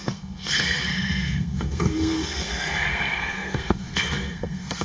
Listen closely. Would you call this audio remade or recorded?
remade